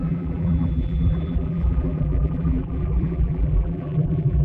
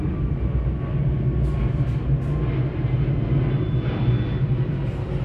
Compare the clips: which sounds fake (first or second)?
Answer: first